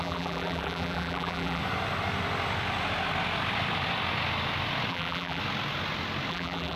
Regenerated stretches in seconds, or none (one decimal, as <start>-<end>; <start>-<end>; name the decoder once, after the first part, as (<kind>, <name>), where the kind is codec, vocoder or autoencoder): 0.0-1.6 (vocoder, BigVGAN v2); 4.9-5.4; 6.3-6.8